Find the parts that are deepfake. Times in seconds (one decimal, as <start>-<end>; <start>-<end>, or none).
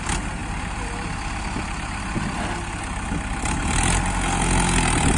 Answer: none